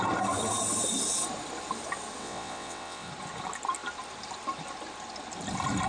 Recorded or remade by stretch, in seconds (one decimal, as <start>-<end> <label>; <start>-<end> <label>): 0.0-2.2 recorded; 2.2-3.1 remade; 3.1-5.9 recorded